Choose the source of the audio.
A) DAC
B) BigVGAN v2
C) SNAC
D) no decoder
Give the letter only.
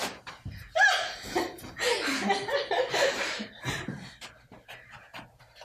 B